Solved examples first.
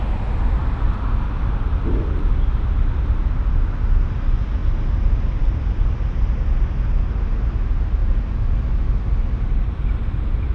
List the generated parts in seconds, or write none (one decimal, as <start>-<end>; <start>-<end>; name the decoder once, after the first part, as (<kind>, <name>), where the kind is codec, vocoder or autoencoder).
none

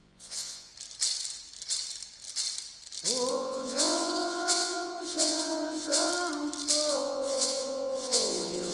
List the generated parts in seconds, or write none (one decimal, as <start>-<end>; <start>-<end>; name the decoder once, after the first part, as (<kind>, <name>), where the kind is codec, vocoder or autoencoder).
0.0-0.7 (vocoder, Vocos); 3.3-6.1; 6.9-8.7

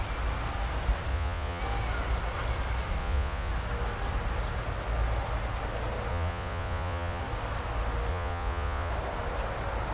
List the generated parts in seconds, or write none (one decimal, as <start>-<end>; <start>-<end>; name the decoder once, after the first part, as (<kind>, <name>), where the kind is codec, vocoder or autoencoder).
1.1-1.6 (vocoder, Vocos); 3.0-3.5; 6.1-7.2; 8.1-8.9

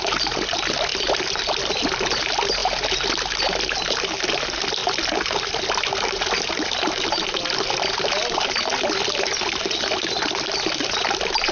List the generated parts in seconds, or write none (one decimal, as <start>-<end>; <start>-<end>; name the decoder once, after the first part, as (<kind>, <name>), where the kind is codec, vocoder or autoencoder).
none